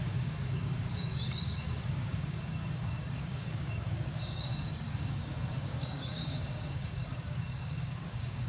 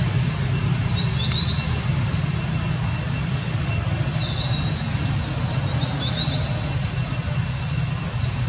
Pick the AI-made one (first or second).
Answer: first